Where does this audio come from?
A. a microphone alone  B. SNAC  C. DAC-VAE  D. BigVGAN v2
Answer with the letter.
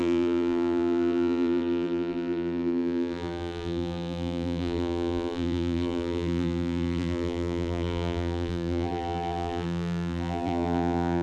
D